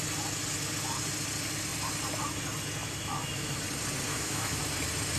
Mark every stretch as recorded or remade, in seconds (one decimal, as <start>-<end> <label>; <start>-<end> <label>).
0.0-2.8 recorded; 2.8-3.6 remade; 3.6-4.1 recorded; 4.1-4.6 remade; 4.6-5.2 recorded